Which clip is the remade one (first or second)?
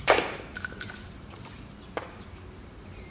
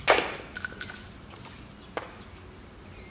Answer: first